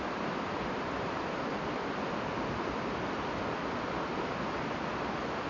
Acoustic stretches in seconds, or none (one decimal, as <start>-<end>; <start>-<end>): 0.0-5.5